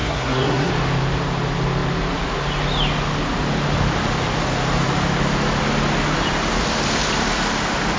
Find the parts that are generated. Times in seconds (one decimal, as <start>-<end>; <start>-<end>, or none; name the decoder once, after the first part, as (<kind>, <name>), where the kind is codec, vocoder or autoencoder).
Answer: 0.0-0.7 (codec, SNAC)